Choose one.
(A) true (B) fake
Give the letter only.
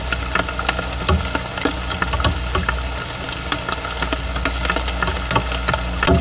A